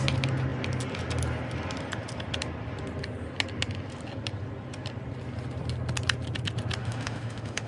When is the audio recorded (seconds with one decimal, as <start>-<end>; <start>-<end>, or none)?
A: 0.0-6.8

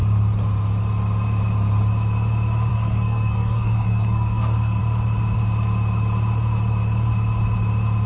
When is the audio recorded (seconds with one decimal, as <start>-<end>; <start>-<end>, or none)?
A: 0.0-2.7; 4.8-8.1

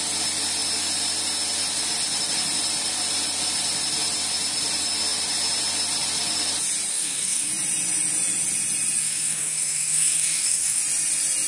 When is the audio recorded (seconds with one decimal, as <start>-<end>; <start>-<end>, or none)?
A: 0.0-6.9; 7.5-9.0; 10.8-11.5